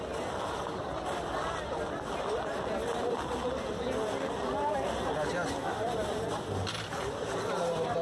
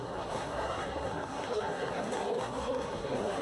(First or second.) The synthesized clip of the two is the second